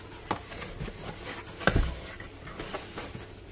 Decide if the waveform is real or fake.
real